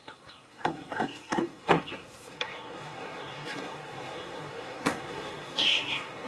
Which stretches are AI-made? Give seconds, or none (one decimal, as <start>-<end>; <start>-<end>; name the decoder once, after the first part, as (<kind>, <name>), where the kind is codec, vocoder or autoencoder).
0.0-6.3 (codec, SNAC)